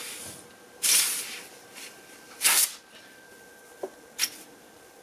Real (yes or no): yes